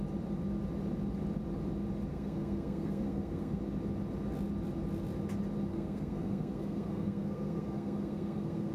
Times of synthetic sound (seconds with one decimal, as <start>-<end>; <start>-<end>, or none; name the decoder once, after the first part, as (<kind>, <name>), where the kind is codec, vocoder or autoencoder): 2.1-3.6 (codec, SNAC); 5.7-8.7